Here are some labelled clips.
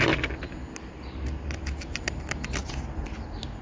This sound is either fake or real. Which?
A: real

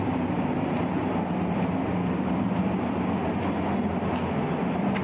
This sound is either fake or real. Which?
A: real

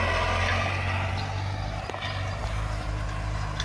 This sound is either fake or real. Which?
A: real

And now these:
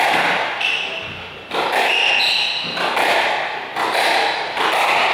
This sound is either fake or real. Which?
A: real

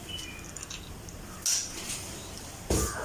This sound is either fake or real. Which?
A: real